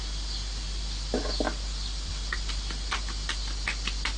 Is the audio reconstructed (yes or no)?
no